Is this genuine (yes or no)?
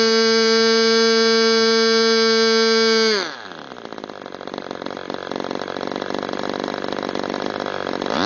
yes